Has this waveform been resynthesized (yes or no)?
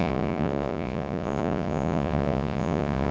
yes